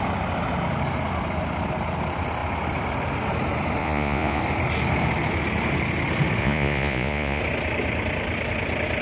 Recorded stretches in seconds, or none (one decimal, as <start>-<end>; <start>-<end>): 0.0-3.8; 4.4-6.4; 7.4-9.0